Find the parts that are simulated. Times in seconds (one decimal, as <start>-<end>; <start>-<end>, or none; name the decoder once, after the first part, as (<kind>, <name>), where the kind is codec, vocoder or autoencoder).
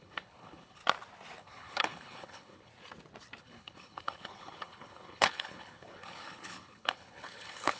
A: 0.0-0.8 (codec, HILCodec); 1.4-2.7; 3.4-7.8